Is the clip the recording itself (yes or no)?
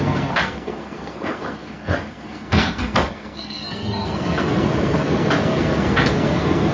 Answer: no